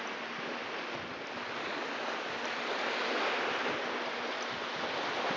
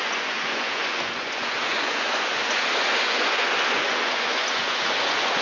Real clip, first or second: first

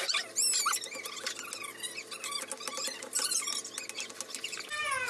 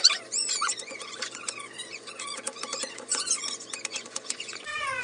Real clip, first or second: first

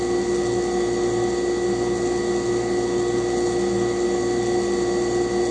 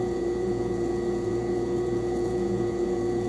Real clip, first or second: first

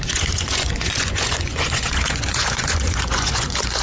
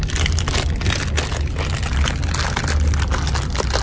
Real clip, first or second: second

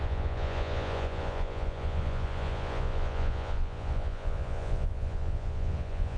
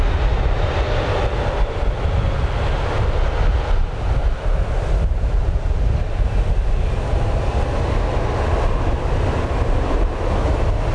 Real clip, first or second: second